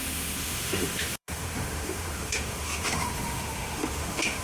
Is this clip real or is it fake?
fake